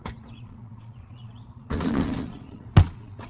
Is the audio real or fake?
fake